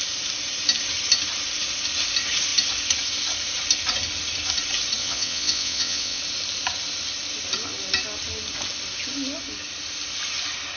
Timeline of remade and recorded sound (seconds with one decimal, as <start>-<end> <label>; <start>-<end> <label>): 0.0-5.0 recorded; 5.0-6.2 remade; 6.2-10.8 recorded